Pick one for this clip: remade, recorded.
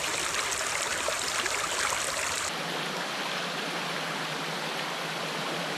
recorded